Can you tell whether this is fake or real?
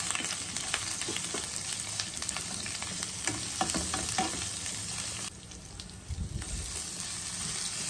real